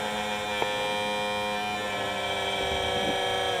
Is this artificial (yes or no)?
no